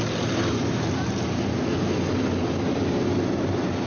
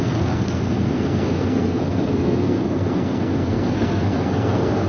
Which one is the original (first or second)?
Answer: first